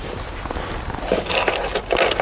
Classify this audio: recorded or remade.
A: recorded